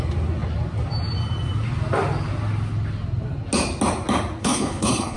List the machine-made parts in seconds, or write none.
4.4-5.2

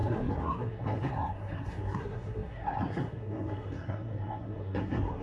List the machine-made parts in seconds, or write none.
0.0-5.2

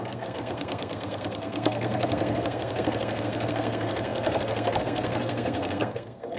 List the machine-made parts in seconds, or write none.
0.0-6.4

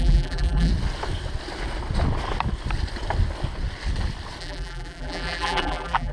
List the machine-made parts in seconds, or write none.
0.0-0.7; 4.4-6.1

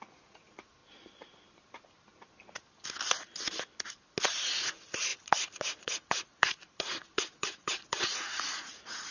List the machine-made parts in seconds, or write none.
0.0-0.8; 4.4-9.1

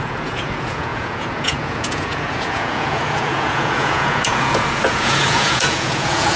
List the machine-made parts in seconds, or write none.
0.0-6.4

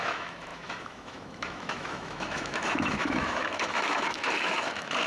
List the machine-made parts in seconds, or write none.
0.0-5.1